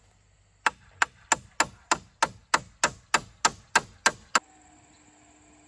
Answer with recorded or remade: recorded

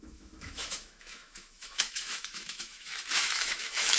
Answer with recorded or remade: remade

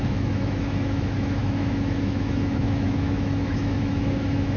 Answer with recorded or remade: remade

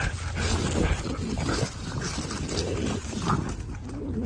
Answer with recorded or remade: recorded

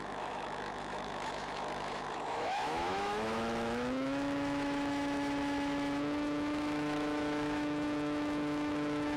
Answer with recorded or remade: remade